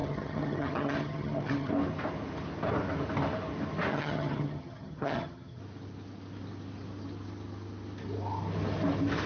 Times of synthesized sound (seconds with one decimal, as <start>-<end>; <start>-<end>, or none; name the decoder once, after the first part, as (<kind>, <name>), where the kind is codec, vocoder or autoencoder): 0.0-1.7 (vocoder, HiFi-GAN); 3.9-5.6